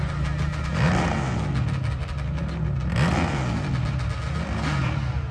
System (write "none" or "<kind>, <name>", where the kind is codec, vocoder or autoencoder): none